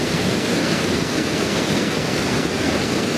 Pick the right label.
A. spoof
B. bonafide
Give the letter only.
A